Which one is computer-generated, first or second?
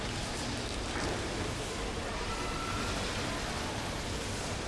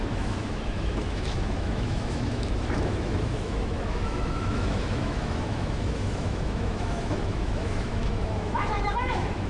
second